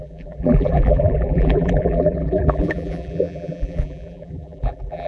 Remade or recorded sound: remade